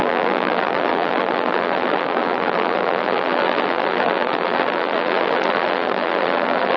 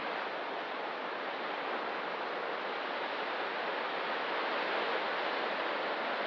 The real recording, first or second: second